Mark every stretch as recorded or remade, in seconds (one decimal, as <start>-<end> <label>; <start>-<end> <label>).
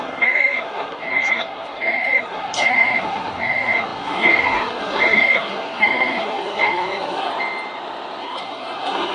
0.0-7.3 remade; 7.3-8.2 recorded; 8.2-9.1 remade